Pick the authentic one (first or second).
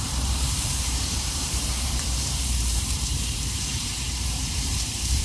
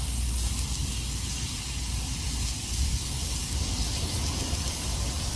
second